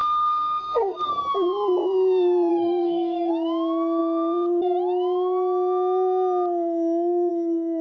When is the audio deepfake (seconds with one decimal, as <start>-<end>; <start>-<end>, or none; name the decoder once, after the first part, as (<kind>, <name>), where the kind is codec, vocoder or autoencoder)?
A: 0.0-1.1 (codec, SNAC); 2.5-3.3